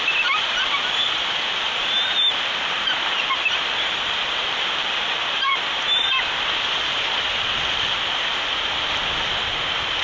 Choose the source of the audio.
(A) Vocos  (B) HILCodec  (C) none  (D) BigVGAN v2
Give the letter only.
D